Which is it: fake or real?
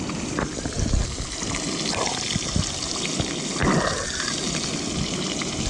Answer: real